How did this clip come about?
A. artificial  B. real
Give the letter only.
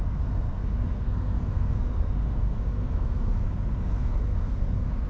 A